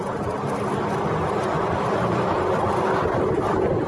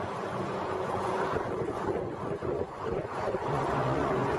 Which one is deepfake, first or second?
second